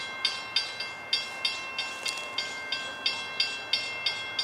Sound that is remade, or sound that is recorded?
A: recorded